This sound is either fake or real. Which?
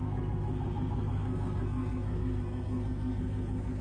fake